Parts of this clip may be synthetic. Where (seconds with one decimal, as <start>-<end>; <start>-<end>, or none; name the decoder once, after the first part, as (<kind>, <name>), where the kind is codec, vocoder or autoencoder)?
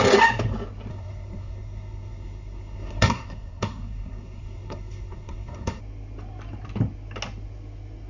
0.9-5.8 (codec, SNAC)